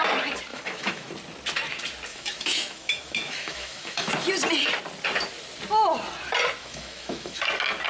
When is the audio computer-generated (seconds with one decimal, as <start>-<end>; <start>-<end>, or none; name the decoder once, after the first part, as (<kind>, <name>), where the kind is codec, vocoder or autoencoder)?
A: 0.5-1.1 (autoencoder, DAC-VAE); 2.1-4.1; 6.6-7.4